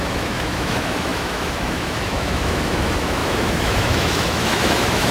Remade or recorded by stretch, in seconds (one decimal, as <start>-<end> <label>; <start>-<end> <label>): 0.0-5.1 remade